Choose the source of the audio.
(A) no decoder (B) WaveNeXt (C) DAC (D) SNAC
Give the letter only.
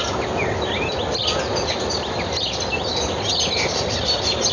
A